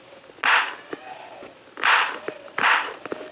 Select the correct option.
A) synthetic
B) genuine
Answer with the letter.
B